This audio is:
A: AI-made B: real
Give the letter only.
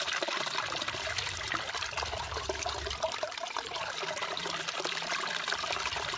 A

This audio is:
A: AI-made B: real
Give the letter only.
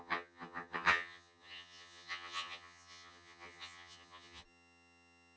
A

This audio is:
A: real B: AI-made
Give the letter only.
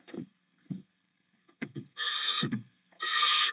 B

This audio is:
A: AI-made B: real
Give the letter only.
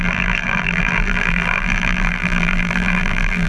A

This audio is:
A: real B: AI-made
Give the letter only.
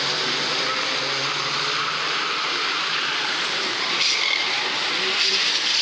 B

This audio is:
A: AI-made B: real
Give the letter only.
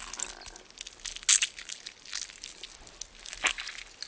B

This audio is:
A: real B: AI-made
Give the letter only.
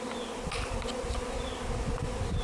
A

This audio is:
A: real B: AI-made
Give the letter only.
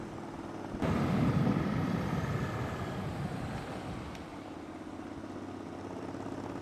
A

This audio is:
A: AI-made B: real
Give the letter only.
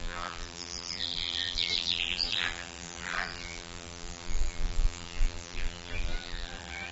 A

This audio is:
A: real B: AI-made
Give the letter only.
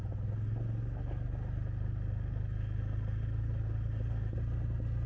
A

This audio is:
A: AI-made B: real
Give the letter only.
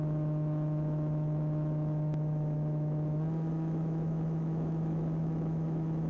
A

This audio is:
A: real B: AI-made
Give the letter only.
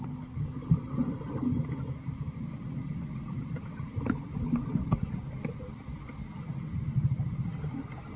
A